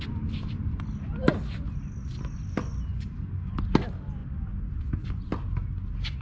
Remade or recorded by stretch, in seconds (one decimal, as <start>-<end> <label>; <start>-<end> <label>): 0.0-2.9 recorded; 2.9-3.5 remade; 3.5-6.2 recorded